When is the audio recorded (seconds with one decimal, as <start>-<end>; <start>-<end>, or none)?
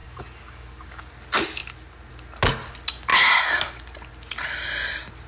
1.1-5.3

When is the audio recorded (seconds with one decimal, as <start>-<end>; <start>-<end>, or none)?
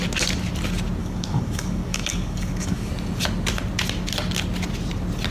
0.0-1.0; 2.9-5.3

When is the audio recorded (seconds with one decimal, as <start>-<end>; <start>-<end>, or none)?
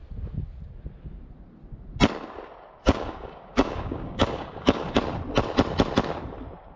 0.0-2.8; 5.0-6.8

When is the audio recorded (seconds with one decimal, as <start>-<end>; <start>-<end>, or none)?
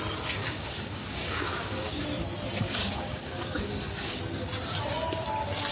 0.0-0.4; 2.0-2.8; 4.2-5.7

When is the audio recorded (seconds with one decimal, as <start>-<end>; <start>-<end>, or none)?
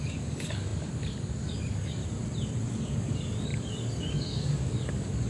2.0-2.7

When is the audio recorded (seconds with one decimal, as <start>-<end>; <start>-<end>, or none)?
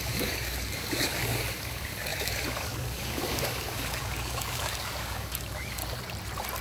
5.8-6.6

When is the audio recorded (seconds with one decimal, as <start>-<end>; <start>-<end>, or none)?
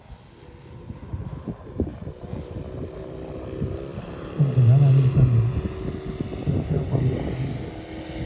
0.0-8.3